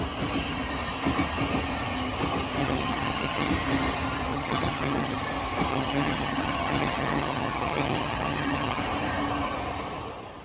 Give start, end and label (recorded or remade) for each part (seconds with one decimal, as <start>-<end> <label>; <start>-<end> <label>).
0.0-2.6 recorded; 2.6-3.5 remade; 3.5-4.3 recorded; 4.3-5.2 remade; 5.2-5.7 recorded; 5.7-8.8 remade; 8.8-10.4 recorded